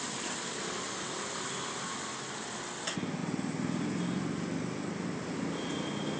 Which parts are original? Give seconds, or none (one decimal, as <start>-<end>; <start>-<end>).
0.0-6.2